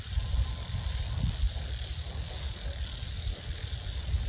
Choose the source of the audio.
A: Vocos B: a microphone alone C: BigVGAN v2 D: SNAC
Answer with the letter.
B